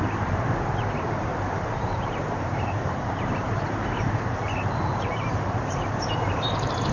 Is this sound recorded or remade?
remade